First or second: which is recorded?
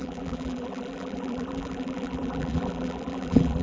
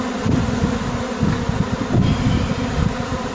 second